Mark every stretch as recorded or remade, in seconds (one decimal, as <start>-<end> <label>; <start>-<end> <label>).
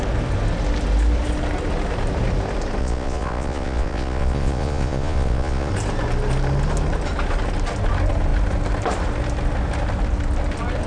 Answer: 0.0-2.8 recorded; 2.8-5.7 remade; 5.7-10.9 recorded